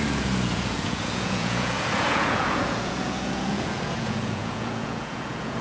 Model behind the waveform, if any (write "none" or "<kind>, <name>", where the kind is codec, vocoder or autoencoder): vocoder, Vocos